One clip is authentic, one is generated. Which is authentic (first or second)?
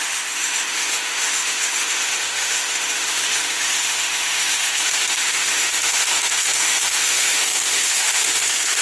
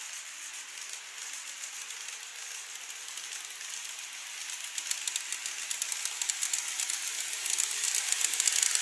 second